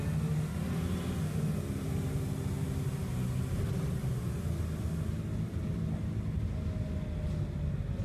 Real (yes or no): yes